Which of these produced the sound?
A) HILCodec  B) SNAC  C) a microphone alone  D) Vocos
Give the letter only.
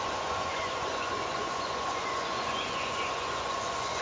D